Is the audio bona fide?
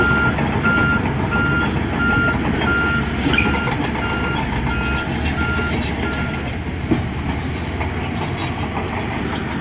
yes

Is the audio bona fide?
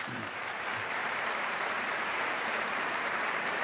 no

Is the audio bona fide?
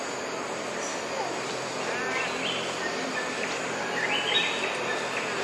yes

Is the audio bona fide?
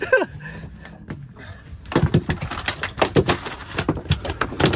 yes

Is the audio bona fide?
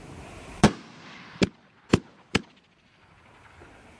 no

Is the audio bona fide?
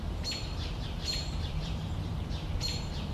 no